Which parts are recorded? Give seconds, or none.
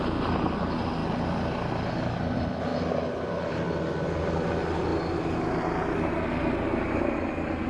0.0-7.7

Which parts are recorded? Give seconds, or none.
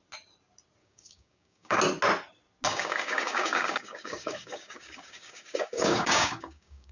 0.0-0.8; 1.8-2.7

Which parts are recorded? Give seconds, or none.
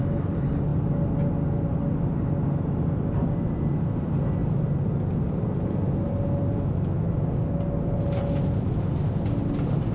0.0-9.9